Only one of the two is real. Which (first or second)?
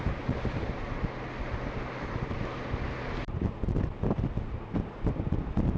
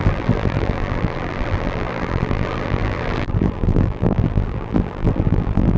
first